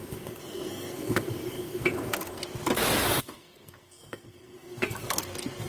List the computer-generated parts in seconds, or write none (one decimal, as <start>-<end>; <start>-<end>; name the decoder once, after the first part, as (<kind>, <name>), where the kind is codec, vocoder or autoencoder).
0.0-2.4 (codec, SNAC); 3.0-5.2